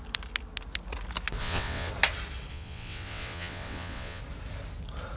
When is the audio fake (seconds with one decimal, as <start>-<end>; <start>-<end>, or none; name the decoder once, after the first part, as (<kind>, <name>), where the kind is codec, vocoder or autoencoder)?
1.4-1.9 (vocoder, WaveNeXt); 2.5-4.2